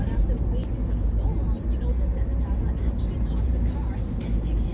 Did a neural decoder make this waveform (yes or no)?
yes